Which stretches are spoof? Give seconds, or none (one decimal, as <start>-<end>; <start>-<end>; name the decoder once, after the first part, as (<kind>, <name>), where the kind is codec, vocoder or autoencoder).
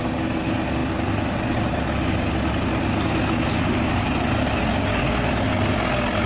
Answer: none